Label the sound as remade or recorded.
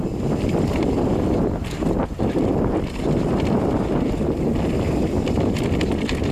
recorded